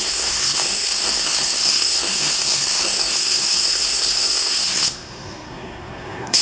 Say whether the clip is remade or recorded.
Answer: remade